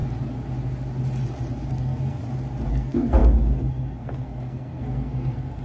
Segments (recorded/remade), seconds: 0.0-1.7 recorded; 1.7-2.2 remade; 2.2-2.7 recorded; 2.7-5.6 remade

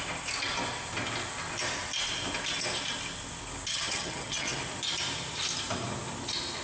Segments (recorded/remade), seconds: 0.0-3.7 recorded; 3.7-4.6 remade; 4.6-6.6 recorded